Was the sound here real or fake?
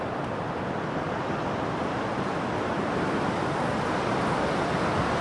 fake